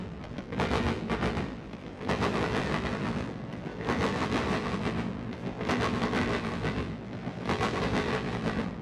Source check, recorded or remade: remade